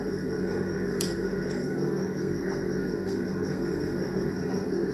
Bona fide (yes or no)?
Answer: no